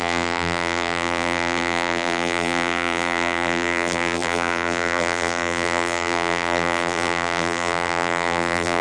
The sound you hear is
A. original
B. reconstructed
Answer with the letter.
B